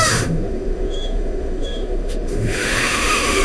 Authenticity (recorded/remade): remade